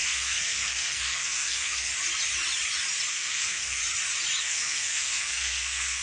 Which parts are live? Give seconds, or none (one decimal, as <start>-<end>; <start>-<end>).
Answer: 1.9-3.1; 3.8-4.4